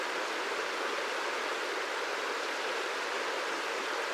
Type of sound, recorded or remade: recorded